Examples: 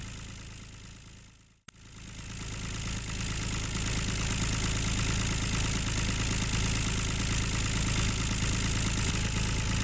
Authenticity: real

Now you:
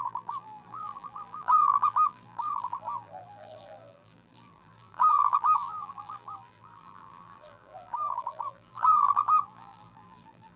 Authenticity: fake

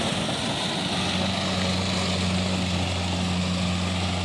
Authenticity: real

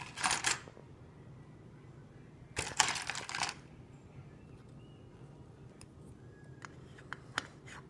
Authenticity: real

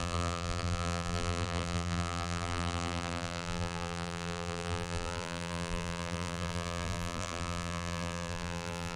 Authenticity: fake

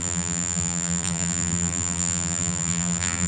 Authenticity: fake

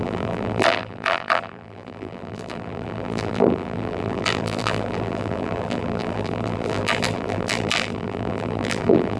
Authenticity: fake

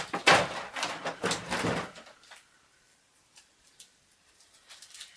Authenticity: fake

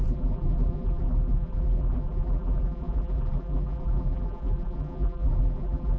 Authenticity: fake